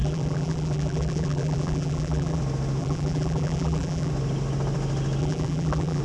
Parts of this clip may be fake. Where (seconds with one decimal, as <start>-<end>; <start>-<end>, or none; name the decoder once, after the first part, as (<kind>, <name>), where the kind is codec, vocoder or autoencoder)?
0.0-2.4 (vocoder, BigVGAN v2); 2.8-4.1; 5.2-6.0

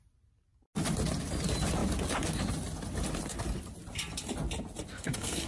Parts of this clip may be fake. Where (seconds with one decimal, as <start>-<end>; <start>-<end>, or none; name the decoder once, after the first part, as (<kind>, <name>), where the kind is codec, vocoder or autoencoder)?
4.9-5.5 (codec, SNAC)

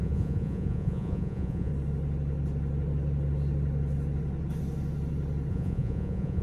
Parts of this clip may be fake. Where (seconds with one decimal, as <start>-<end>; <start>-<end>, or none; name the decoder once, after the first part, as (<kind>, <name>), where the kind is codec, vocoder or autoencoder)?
0.0-1.7 (vocoder, Vocos); 5.5-6.4